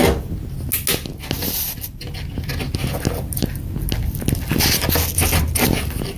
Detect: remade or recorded recorded